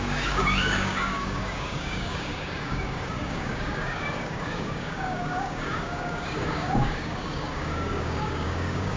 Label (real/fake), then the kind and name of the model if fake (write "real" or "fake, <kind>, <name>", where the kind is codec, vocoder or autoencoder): fake, codec, DAC